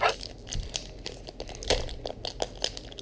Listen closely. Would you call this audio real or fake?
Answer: real